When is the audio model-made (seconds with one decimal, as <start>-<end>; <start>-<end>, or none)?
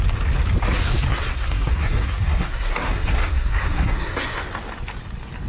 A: 1.1-4.4